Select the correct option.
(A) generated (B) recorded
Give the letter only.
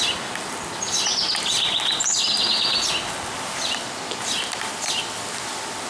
B